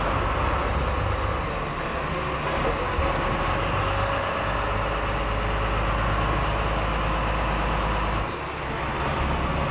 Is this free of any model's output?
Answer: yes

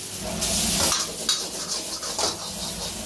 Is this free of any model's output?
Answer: yes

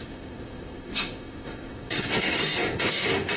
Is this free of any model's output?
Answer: no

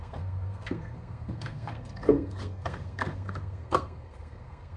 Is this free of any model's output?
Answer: no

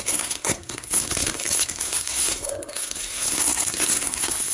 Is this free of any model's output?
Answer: no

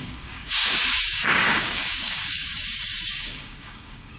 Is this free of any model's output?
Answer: no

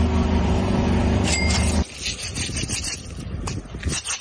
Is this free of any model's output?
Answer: yes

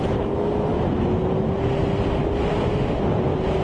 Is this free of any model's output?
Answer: yes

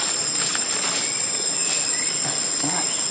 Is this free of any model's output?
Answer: yes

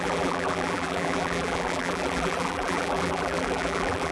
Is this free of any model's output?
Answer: no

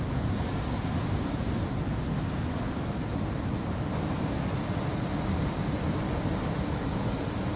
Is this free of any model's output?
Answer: yes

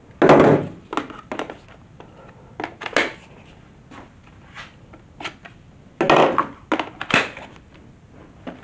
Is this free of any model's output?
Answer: yes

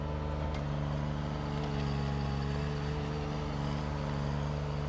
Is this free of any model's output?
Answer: yes